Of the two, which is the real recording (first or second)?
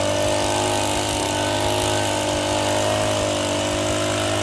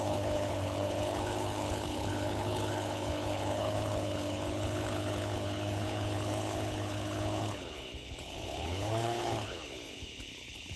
first